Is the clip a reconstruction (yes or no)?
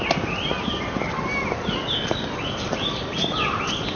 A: no